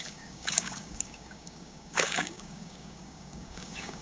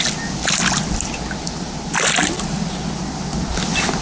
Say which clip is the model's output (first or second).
first